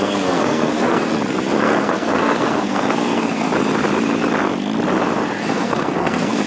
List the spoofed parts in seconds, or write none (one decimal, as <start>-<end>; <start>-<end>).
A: 0.0-1.1; 1.6-3.5; 5.4-6.5